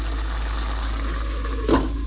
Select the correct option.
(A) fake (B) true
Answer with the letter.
B